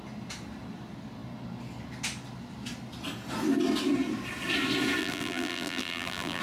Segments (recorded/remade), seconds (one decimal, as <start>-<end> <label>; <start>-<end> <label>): 0.0-5.0 recorded; 5.0-6.4 remade